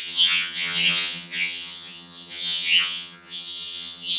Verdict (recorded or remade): remade